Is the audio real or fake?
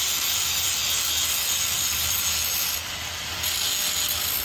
real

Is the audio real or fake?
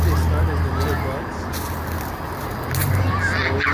real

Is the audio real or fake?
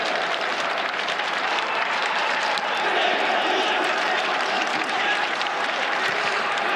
fake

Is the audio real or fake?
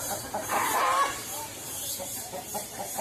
fake